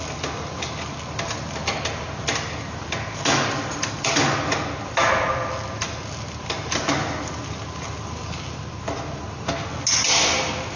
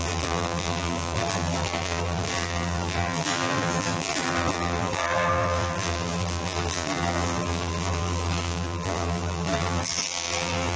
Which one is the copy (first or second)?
second